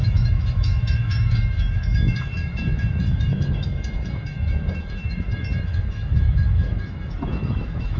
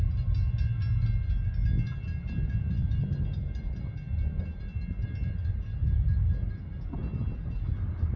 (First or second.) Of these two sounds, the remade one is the first